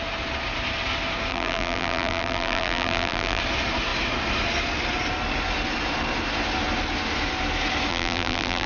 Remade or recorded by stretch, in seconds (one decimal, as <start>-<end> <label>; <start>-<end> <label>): 0.0-1.3 recorded; 1.3-3.4 remade; 3.4-7.9 recorded; 7.9-8.7 remade

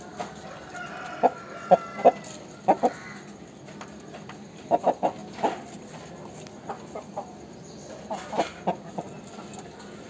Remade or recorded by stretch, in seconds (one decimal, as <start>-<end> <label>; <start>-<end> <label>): 0.0-10.1 recorded

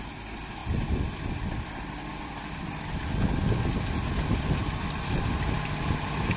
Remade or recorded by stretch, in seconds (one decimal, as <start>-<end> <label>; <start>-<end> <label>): 0.0-0.6 recorded; 0.6-2.8 remade; 2.8-4.6 recorded; 4.6-5.8 remade; 5.8-6.4 recorded